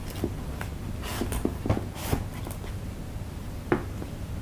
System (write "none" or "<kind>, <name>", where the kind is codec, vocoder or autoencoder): none